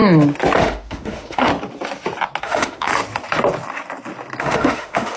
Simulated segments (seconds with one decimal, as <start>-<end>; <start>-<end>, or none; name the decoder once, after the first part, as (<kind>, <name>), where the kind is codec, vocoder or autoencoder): 0.6-1.5 (autoencoder, DAC-VAE); 2.4-2.9; 4.4-5.2